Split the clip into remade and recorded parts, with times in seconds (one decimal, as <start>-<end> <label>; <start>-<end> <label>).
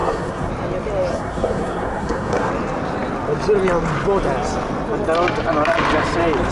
0.0-0.5 remade; 0.5-1.1 recorded; 1.1-2.5 remade; 2.5-6.5 recorded